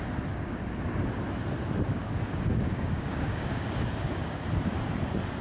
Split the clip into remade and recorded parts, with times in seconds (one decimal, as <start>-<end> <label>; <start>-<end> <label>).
0.0-1.9 recorded; 1.9-4.4 remade; 4.4-5.4 recorded